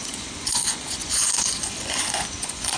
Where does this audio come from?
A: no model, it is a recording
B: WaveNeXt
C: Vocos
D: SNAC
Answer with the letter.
C